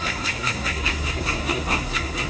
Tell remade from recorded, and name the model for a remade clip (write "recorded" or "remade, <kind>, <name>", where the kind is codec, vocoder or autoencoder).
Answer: remade, codec, SNAC